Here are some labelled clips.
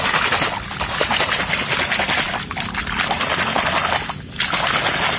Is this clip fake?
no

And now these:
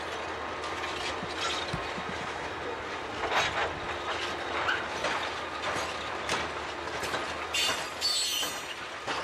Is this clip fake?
no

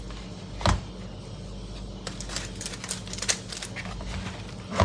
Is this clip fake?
no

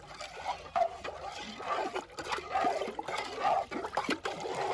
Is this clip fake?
no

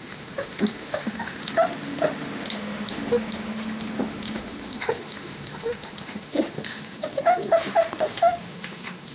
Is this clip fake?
yes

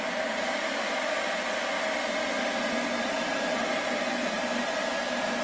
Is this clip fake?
no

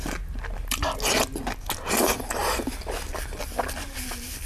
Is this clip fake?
no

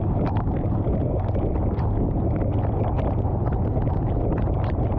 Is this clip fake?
no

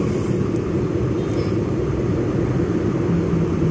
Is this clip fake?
no